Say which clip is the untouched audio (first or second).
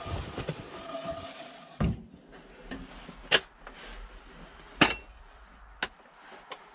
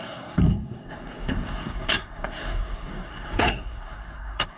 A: first